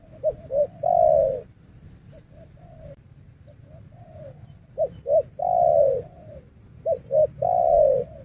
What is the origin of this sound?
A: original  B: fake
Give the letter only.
B